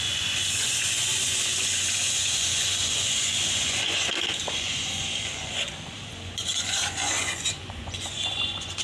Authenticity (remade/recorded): remade